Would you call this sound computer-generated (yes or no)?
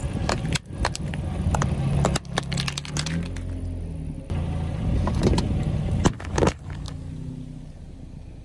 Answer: no